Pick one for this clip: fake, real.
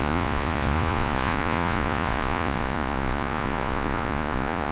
fake